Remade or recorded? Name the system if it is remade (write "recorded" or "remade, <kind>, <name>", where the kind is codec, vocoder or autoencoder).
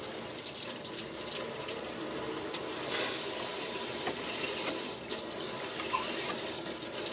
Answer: remade, vocoder, BigVGAN v2